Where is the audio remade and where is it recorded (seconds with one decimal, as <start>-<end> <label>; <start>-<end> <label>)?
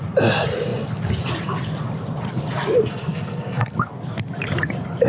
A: 0.0-2.9 recorded; 2.9-3.9 remade; 3.9-5.1 recorded